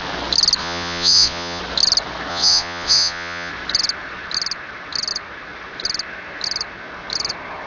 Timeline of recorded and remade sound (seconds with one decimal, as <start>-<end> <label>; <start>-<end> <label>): 0.0-0.6 recorded; 0.6-1.6 remade; 1.6-2.3 recorded; 2.3-3.5 remade; 3.5-7.7 recorded